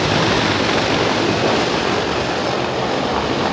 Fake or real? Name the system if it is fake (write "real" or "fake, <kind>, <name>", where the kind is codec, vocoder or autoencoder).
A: real